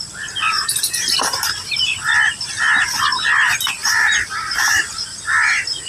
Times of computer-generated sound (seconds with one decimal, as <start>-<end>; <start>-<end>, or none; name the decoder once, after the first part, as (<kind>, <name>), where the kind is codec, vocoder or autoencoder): 0.5-1.7 (vocoder, BigVGAN v2); 3.8-4.9